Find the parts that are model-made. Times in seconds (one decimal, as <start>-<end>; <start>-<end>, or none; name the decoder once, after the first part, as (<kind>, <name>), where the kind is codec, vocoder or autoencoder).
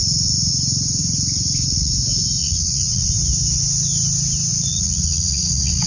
0.0-0.5 (vocoder, Vocos); 1.0-1.9; 2.4-3.1; 4.5-5.9